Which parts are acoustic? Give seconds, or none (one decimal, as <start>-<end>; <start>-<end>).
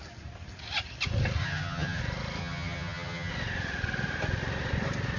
0.0-1.4; 2.0-2.4; 3.3-5.2